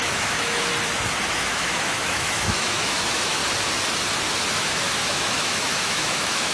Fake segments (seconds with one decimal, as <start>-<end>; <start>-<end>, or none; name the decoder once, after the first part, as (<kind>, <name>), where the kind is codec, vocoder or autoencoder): 0.0-0.7 (autoencoder, DAC-VAE); 1.3-3.4; 4.5-6.5